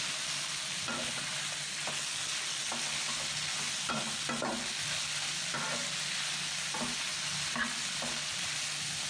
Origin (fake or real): real